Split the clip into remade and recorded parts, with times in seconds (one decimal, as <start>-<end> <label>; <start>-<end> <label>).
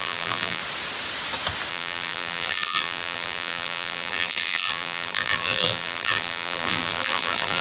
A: 0.0-0.6 remade; 0.6-1.7 recorded; 1.7-7.6 remade